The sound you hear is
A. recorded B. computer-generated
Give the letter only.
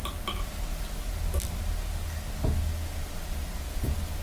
A